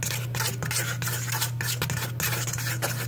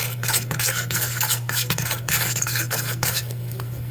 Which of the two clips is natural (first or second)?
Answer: first